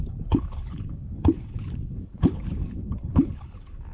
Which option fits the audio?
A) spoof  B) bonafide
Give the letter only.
A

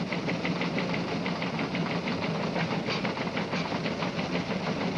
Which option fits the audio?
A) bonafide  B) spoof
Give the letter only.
A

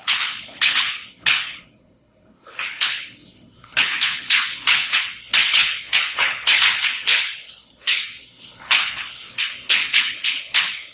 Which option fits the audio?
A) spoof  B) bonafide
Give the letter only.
A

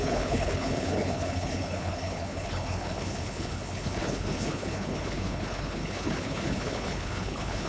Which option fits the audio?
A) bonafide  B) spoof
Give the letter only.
B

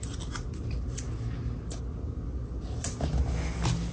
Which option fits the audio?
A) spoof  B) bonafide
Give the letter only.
B